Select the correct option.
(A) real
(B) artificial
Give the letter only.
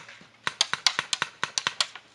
A